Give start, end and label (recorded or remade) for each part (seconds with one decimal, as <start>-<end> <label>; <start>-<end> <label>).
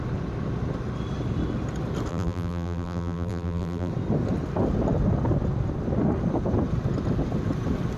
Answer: 0.0-2.1 recorded; 2.1-3.9 remade; 3.9-8.0 recorded